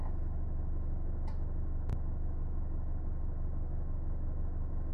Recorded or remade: recorded